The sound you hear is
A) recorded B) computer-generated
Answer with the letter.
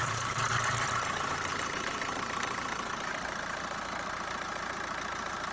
B